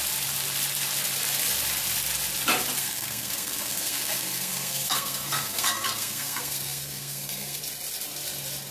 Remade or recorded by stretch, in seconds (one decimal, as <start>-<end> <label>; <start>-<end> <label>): 0.0-2.8 recorded; 2.8-7.6 remade; 7.6-8.7 recorded